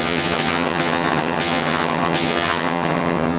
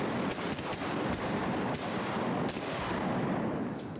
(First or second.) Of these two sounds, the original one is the second